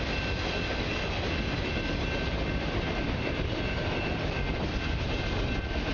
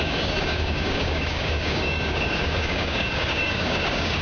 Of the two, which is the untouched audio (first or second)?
first